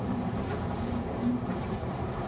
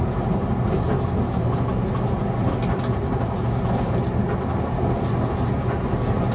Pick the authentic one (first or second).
second